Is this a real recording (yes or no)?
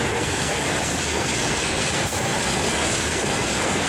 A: no